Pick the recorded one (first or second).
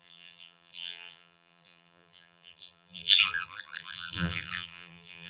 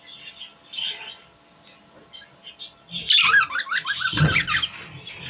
second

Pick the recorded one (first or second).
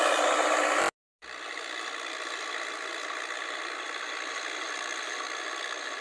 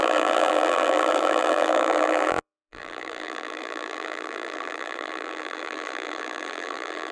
first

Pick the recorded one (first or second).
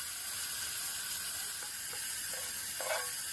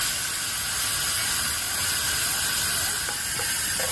second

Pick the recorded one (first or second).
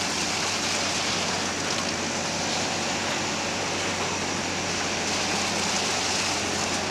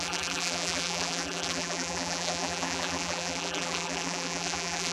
first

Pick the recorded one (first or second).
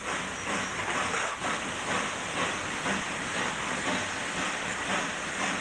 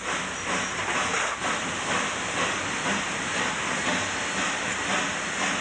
second